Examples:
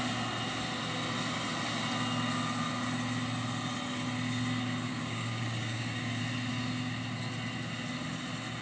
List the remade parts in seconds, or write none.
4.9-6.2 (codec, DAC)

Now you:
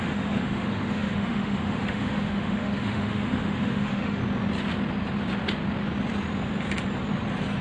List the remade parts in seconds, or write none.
0.0-4.2 (autoencoder, DAC-VAE)

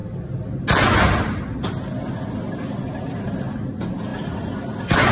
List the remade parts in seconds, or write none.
none

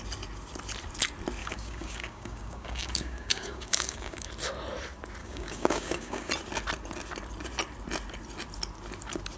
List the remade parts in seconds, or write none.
1.4-4.3 (codec, DAC); 5.2-6.3

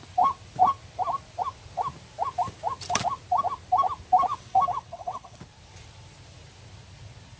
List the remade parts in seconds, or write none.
4.3-5.4 (vocoder, WaveNeXt)

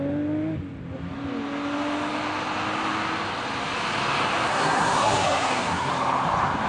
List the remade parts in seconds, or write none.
4.5-5.9 (codec, SNAC)